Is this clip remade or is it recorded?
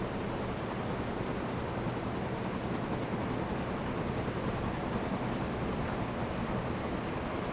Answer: recorded